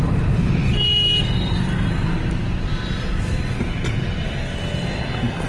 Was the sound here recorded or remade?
recorded